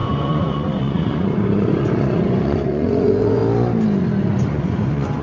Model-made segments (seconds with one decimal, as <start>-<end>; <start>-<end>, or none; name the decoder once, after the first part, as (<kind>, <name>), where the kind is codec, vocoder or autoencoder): 0.0-3.4 (vocoder, Vocos); 4.5-5.2